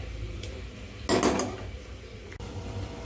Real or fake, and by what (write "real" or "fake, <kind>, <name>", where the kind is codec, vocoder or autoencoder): real